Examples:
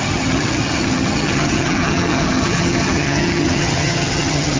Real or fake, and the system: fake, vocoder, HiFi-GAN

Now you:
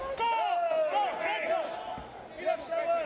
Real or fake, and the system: real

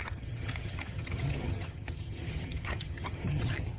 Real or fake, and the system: fake, vocoder, HiFi-GAN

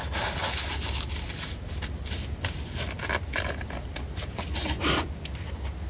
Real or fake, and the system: real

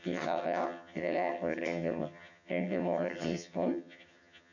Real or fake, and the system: fake, vocoder, HiFi-GAN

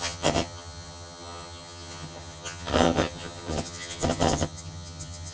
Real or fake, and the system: fake, vocoder, HiFi-GAN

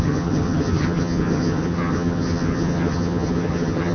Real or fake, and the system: fake, vocoder, HiFi-GAN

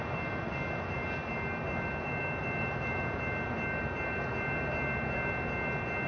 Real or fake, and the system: real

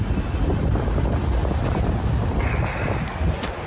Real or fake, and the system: real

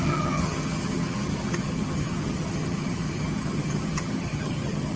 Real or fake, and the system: fake, vocoder, HiFi-GAN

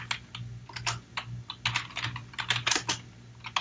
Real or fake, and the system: real